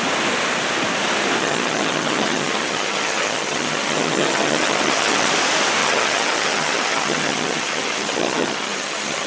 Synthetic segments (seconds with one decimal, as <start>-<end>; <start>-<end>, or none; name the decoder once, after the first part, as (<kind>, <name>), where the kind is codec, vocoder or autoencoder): 1.4-5.3 (vocoder, HiFi-GAN); 5.8-9.3